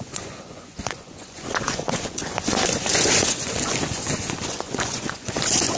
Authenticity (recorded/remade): remade